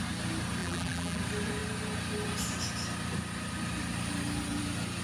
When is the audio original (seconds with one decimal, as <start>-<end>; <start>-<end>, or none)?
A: 0.0-0.6; 1.2-5.0